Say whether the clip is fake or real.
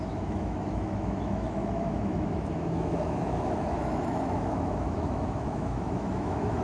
fake